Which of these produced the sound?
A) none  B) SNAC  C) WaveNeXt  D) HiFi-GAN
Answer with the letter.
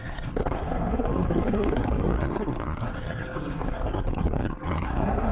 B